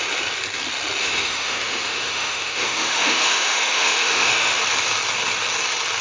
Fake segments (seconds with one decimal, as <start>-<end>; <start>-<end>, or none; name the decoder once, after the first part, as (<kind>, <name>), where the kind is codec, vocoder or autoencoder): 1.0-4.6 (autoencoder, DAC-VAE)